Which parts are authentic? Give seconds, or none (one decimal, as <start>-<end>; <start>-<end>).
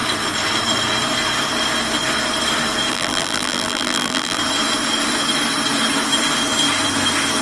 0.0-2.9; 4.4-7.4